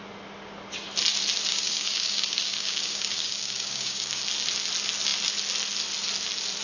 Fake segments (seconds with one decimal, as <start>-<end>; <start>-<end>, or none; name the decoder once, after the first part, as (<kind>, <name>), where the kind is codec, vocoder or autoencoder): 1.5-4.2 (codec, DAC)